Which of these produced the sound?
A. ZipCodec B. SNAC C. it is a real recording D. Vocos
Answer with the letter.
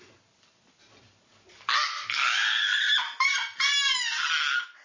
C